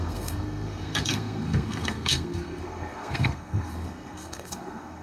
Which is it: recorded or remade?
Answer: remade